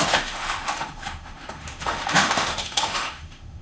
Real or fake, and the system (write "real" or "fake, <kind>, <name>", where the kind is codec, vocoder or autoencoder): fake, autoencoder, DAC-VAE